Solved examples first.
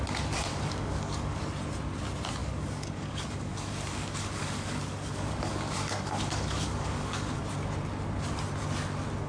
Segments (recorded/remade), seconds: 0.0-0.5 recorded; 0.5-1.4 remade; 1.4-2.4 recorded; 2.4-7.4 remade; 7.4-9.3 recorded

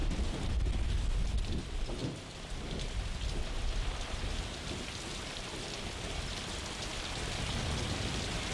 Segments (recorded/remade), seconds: 0.0-8.5 recorded

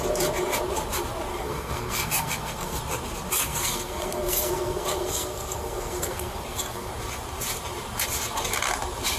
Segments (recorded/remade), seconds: 0.0-1.3 recorded; 1.3-2.8 remade; 2.8-3.4 recorded; 3.4-6.9 remade; 6.9-9.2 recorded